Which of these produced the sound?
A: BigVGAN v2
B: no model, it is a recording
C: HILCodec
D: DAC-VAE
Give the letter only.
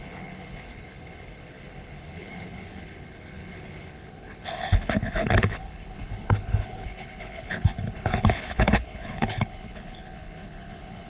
C